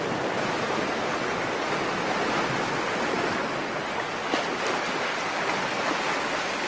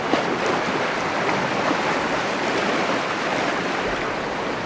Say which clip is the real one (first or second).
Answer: first